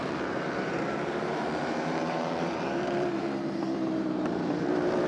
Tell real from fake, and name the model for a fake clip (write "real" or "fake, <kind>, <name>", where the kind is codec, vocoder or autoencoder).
fake, vocoder, BigVGAN v2